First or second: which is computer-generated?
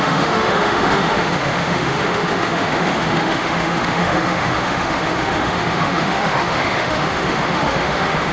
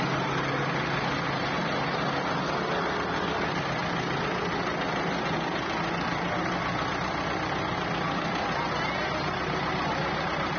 first